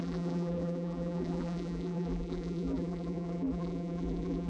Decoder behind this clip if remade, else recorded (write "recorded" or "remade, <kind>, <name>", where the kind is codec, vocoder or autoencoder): remade, vocoder, BigVGAN v2